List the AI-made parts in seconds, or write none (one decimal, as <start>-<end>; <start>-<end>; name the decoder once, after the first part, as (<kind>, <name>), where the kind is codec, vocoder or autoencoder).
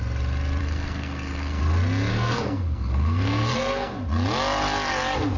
0.6-1.6 (codec, SNAC); 2.1-4.0